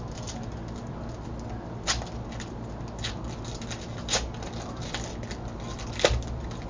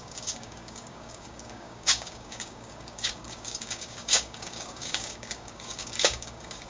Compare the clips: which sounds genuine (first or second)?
first